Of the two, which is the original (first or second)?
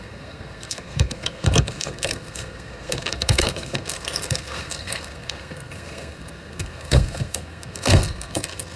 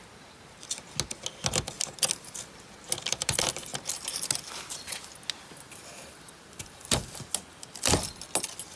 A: second